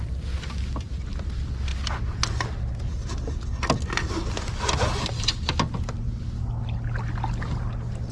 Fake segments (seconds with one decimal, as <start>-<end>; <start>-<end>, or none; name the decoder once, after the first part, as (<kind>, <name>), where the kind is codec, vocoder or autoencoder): none